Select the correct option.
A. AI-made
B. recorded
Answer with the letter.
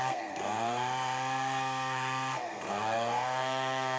A